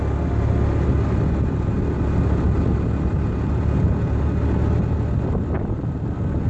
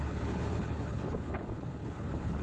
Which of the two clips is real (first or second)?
first